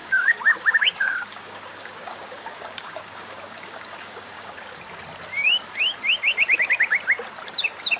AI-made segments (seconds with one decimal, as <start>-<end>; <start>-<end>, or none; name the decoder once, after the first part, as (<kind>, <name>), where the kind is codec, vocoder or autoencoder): 0.0-4.8 (codec, DAC); 5.3-5.8